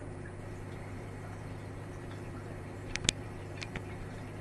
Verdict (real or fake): fake